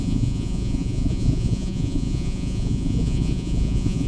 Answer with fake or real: fake